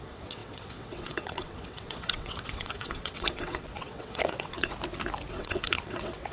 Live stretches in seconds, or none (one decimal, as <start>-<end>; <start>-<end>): 4.7-5.3